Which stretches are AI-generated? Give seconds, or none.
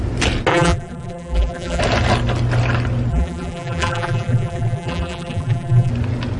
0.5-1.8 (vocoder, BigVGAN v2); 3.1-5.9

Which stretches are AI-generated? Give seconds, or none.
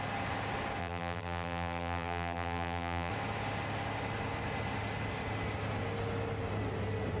0.8-3.1 (vocoder, BigVGAN v2)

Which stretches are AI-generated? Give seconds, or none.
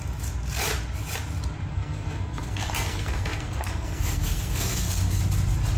1.7-5.2 (codec, SNAC)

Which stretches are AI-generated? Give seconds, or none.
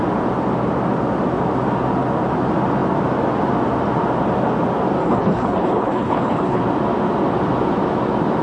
5.0-6.6 (codec, HILCodec)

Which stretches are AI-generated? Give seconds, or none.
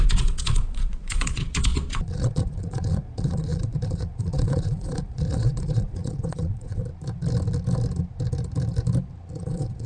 0.0-6.8 (vocoder, Vocos); 9.4-9.9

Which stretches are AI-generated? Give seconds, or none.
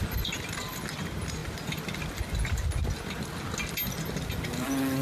none